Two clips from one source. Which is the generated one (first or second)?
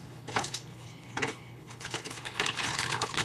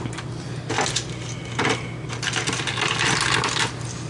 first